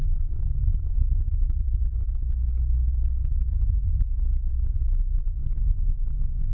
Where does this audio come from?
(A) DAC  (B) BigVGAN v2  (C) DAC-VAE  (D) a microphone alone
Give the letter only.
A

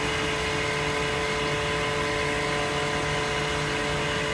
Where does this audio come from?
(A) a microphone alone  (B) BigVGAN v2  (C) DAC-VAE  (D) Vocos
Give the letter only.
A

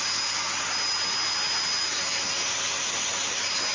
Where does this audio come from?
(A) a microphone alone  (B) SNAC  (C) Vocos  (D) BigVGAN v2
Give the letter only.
A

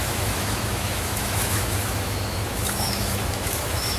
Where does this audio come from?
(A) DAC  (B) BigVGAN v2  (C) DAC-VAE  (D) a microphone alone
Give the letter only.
C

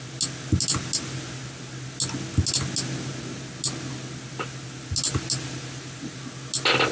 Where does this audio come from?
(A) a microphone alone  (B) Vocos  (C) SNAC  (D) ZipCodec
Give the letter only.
A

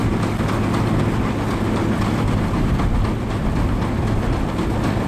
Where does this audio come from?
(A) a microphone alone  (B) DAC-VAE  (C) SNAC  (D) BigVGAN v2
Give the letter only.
A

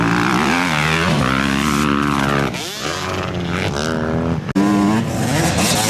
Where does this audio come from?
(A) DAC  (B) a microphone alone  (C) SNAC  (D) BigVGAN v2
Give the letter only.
B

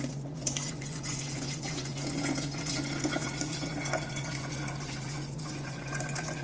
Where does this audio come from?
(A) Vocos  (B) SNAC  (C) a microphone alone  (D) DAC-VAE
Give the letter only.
A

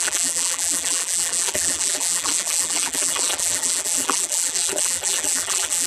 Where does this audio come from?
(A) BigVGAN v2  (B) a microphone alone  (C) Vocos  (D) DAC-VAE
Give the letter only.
A